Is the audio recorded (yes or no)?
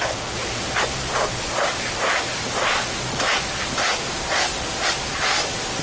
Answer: yes